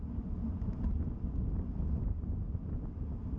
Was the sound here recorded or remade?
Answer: recorded